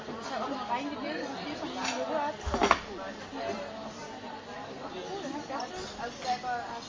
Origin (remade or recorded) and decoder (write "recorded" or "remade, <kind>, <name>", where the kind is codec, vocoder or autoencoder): recorded